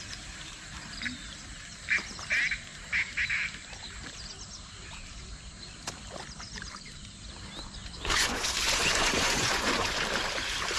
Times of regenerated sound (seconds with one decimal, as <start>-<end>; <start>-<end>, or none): 7.8-10.0